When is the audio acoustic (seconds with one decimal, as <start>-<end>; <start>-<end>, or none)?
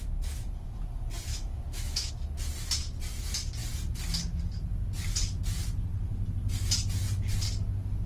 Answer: 0.0-1.3; 2.1-8.1